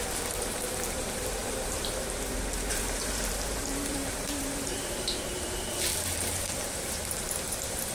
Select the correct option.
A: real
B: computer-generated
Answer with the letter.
B